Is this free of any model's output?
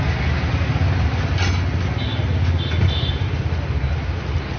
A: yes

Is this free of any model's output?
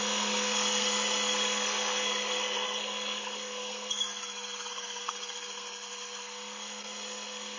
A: no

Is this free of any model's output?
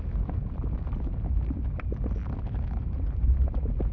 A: yes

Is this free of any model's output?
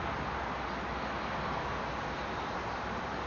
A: yes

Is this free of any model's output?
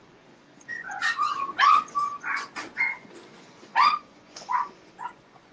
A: no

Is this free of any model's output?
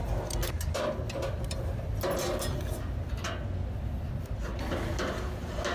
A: yes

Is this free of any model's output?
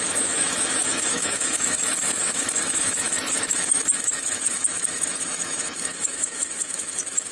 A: no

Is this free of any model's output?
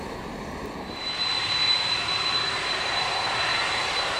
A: no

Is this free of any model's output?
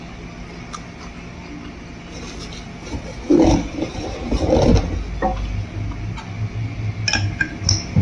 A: yes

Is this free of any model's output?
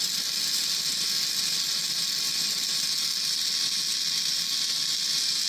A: yes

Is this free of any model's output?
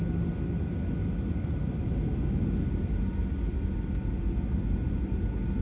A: yes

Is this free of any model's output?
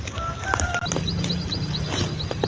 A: yes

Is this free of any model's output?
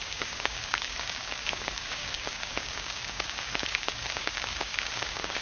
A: no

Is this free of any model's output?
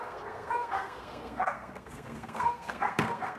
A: no